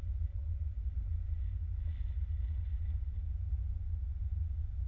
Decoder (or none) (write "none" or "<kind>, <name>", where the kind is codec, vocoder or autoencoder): none